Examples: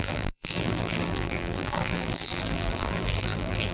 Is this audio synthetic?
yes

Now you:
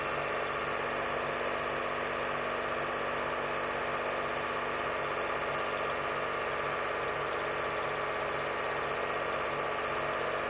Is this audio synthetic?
no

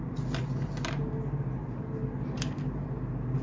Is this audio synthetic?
no